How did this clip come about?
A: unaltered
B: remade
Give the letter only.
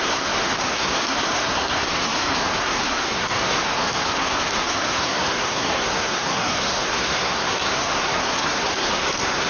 B